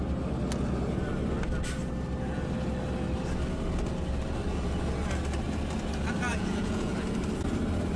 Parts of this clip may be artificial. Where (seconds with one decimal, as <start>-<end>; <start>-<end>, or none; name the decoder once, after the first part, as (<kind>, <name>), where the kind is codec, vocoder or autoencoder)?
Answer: 6.3-6.9 (vocoder, Vocos)